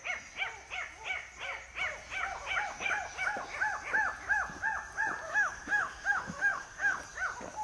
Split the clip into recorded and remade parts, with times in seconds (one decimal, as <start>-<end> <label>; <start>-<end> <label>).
0.0-5.3 recorded; 5.3-7.0 remade; 7.0-7.6 recorded